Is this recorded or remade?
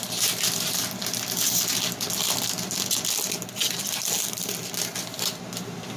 recorded